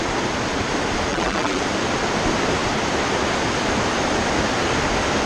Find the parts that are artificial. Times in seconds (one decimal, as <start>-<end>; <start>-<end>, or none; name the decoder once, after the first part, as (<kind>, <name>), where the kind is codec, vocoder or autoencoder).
1.1-1.6 (vocoder, BigVGAN v2)